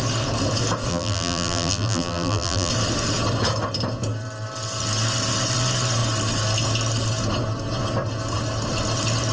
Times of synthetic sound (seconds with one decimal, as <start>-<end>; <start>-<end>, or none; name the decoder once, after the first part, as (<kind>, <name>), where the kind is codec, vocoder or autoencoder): 0.9-2.7 (vocoder, BigVGAN v2)